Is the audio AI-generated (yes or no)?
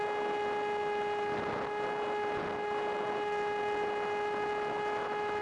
no